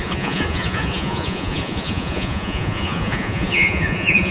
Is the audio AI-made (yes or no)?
yes